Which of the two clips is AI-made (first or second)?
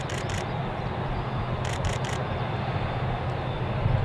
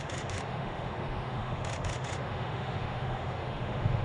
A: second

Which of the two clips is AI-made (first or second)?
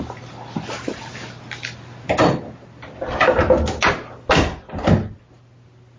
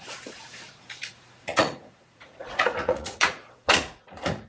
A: second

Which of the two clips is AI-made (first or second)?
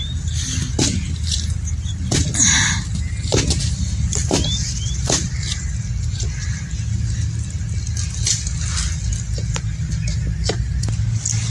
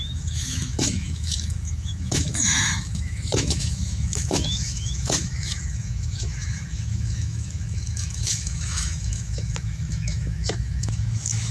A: second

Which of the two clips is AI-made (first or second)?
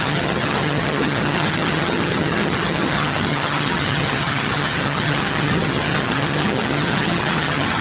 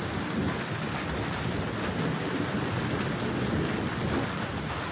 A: first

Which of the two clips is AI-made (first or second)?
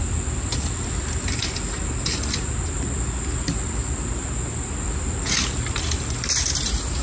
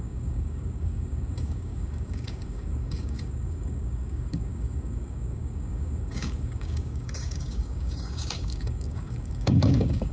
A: second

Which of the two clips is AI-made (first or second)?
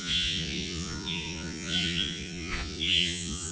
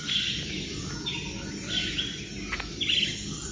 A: first